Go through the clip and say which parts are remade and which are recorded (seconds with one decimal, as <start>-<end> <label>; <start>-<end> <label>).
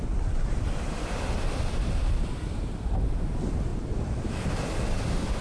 0.0-5.4 recorded